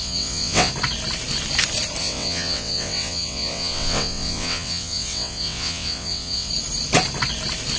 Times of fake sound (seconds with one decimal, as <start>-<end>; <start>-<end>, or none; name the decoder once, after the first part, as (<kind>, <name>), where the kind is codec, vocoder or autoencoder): 0.0-0.7 (vocoder, WaveNeXt); 2.0-6.5